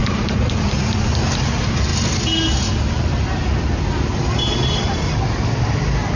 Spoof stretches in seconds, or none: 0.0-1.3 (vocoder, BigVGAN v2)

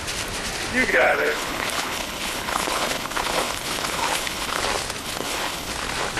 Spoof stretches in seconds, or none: 0.9-4.6 (codec, HILCodec); 5.0-5.7

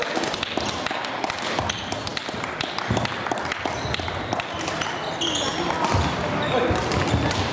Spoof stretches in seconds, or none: none

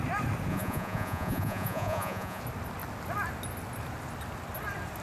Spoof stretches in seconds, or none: 0.5-2.4 (vocoder, Vocos)

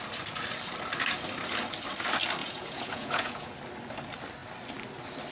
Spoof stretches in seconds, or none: 2.4-3.5 (vocoder, Vocos)

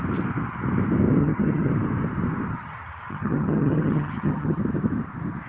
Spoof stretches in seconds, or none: 1.2-1.7 (vocoder, HiFi-GAN); 2.5-4.6